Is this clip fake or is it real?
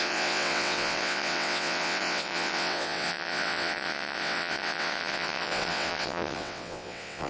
fake